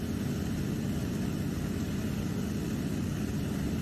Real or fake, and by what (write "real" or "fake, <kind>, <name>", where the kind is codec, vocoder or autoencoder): real